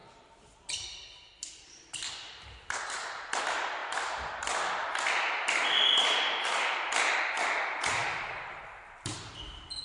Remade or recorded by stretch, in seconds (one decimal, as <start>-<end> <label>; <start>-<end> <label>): 0.0-3.4 remade; 3.4-3.8 recorded; 3.8-7.2 remade; 7.2-9.8 recorded

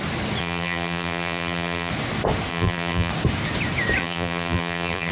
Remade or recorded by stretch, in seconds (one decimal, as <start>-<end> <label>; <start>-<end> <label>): 0.0-0.4 recorded; 0.4-1.9 remade; 1.9-2.5 recorded; 2.5-3.1 remade; 3.1-4.0 recorded; 4.0-5.1 remade